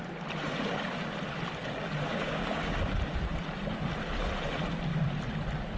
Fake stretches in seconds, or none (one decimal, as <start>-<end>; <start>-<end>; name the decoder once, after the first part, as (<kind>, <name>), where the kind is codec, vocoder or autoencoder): 2.1-2.8 (codec, DAC)